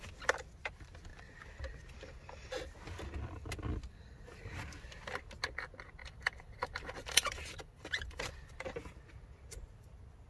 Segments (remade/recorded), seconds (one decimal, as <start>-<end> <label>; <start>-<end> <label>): 0.0-6.0 recorded; 6.0-8.3 remade; 8.3-10.3 recorded